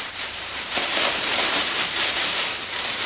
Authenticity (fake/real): fake